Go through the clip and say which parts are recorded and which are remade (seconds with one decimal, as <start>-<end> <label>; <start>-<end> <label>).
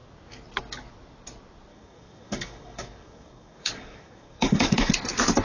0.0-1.7 recorded; 1.7-4.9 remade; 4.9-5.4 recorded